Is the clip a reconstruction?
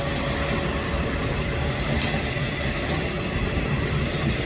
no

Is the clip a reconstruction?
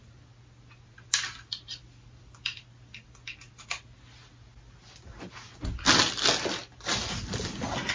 no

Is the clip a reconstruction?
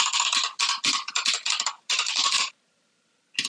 no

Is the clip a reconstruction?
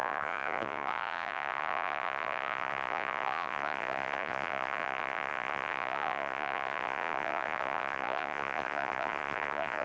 yes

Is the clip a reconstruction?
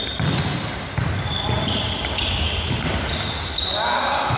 no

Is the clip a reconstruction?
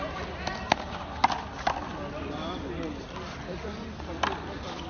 no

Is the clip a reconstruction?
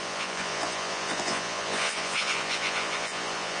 yes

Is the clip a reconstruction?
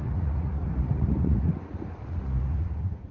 yes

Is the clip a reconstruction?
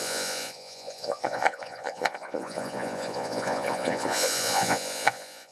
yes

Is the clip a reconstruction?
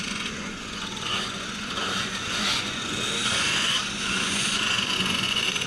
yes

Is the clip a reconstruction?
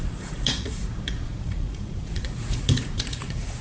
yes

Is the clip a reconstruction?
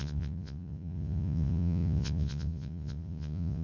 yes